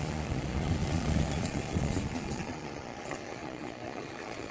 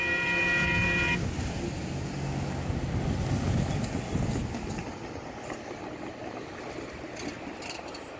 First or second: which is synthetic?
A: first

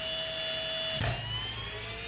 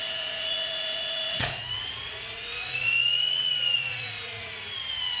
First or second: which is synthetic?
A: second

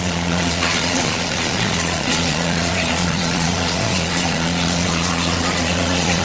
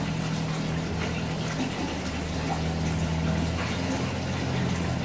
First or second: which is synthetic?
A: first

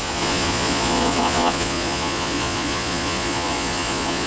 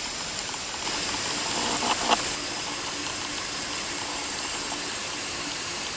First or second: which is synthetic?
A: first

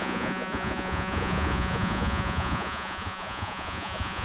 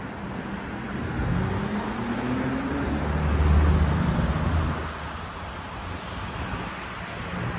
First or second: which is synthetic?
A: first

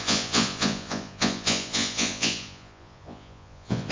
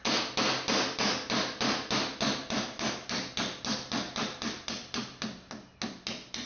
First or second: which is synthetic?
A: first